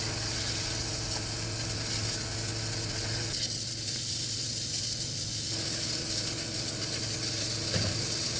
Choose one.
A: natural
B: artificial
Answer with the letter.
A